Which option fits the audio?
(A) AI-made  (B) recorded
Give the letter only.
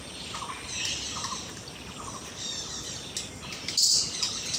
B